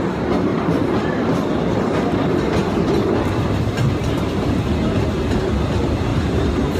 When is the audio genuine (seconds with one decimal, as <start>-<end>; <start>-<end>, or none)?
0.0-0.5; 4.6-6.1